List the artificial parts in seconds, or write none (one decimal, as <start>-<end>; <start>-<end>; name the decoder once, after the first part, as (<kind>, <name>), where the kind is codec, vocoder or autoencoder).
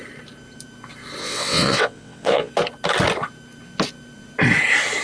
1.2-2.5 (vocoder, WaveNeXt)